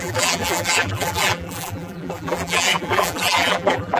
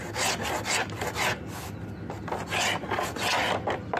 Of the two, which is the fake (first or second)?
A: first